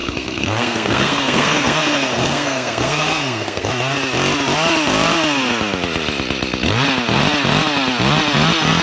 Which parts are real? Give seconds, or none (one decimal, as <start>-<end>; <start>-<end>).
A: 3.7-8.8